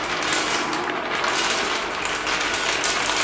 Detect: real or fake real